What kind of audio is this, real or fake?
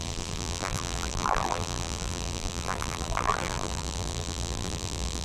fake